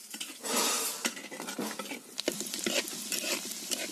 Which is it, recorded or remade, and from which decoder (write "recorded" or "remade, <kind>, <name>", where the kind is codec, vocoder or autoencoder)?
recorded